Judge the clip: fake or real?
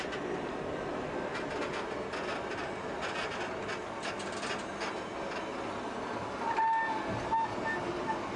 real